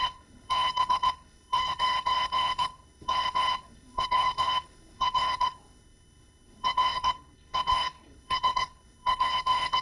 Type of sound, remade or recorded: remade